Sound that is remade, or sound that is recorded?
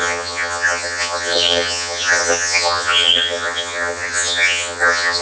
remade